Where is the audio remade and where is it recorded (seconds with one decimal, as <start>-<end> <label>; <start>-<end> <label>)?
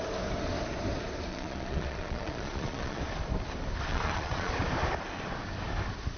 0.0-1.3 recorded; 1.3-3.0 remade; 3.0-3.9 recorded; 3.9-4.5 remade; 4.5-6.2 recorded